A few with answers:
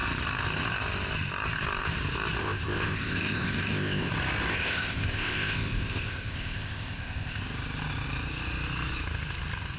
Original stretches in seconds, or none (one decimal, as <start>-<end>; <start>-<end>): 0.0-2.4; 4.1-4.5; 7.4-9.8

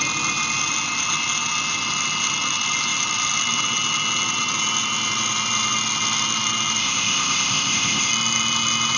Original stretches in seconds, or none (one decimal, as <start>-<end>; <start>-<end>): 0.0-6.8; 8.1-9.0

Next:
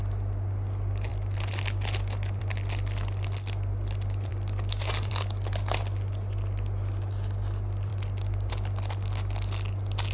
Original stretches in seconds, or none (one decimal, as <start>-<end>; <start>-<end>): 0.0-10.1